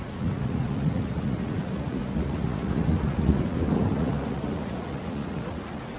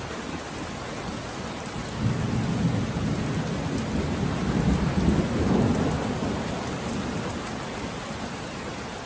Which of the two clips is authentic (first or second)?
second